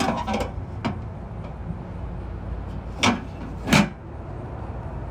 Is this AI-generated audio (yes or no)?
no